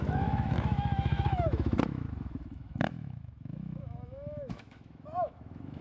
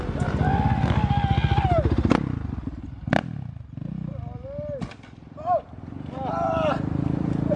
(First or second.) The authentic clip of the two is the second